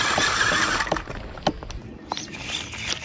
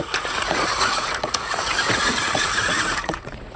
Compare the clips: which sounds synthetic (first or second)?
second